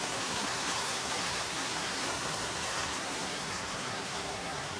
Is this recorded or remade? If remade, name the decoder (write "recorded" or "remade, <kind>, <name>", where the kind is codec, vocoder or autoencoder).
remade, codec, SNAC